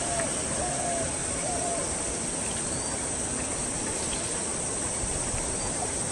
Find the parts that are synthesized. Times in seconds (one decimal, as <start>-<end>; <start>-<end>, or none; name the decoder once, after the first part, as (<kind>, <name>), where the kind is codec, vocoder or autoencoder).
1.2-2.0 (vocoder, BigVGAN v2); 4.3-4.9